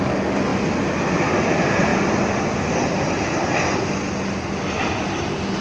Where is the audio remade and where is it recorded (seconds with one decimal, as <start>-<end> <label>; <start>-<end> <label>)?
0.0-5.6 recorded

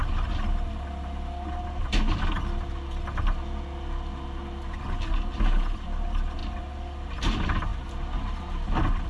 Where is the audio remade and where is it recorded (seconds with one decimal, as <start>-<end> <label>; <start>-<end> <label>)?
0.0-9.1 recorded

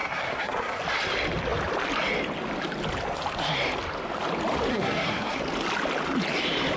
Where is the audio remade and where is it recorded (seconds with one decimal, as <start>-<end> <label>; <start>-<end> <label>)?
0.0-0.8 remade; 0.8-4.7 recorded; 4.7-5.4 remade; 5.4-6.8 recorded